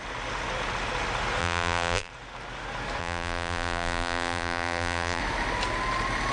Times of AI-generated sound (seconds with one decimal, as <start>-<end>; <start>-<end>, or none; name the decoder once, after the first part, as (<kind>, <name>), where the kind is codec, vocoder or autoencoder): 1.4-2.1 (vocoder, BigVGAN v2); 3.0-5.2